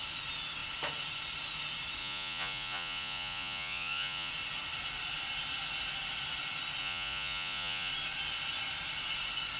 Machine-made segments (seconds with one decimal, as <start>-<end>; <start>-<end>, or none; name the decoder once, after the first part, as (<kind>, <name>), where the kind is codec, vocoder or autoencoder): 2.0-4.3 (vocoder, Vocos); 6.8-7.9